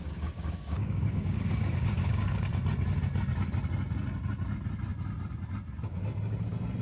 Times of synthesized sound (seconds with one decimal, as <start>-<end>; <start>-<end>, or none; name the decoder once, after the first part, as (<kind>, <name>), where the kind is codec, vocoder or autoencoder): 0.0-2.5 (codec, DAC)